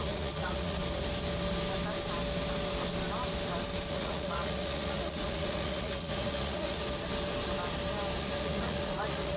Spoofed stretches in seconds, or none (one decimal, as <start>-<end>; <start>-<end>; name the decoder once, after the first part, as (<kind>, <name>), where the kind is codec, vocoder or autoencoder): 0.0-0.8 (vocoder, Vocos); 3.9-6.8; 8.2-9.4